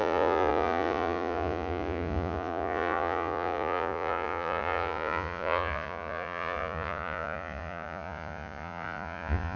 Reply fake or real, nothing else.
fake